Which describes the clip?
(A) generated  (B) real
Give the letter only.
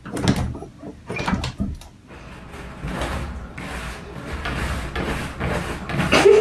B